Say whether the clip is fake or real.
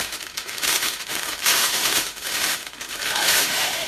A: fake